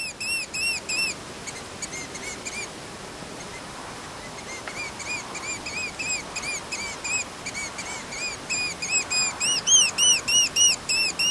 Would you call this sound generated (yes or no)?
no